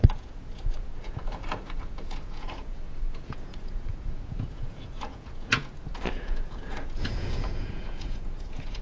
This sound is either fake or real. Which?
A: fake